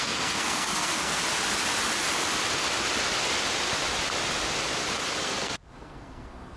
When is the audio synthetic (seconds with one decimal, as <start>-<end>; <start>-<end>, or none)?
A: 0.0-1.2; 5.2-6.6